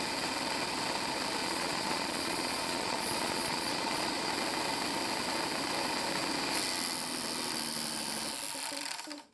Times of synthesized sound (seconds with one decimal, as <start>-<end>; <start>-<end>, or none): 1.4-4.3